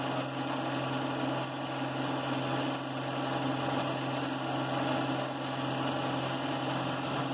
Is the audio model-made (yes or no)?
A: no